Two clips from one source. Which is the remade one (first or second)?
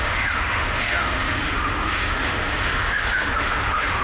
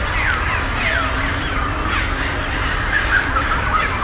first